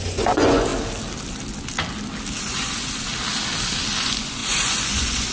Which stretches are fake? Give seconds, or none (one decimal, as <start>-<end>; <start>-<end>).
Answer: 0.0-0.7; 2.4-3.1; 4.0-5.3